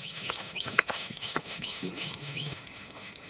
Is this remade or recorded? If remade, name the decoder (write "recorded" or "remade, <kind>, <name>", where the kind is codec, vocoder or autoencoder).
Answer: remade, autoencoder, DAC-VAE